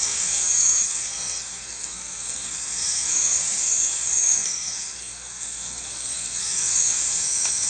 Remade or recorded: remade